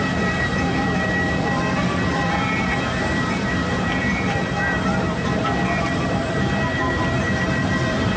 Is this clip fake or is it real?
fake